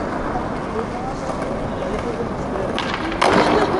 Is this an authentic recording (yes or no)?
yes